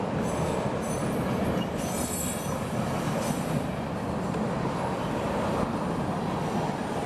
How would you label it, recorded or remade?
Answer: recorded